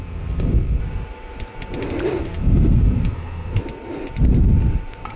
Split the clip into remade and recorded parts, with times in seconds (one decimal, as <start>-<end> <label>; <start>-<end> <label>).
0.0-0.8 remade; 0.8-2.2 recorded; 2.2-3.6 remade; 3.6-5.2 recorded